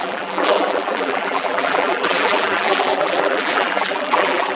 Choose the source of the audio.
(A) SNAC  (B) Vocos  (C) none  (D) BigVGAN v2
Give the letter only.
D